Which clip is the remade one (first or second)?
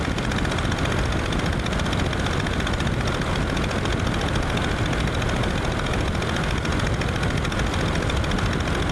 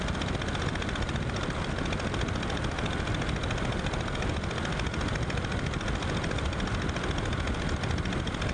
second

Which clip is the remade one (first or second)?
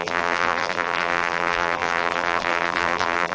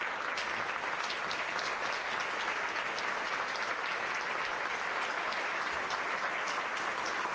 first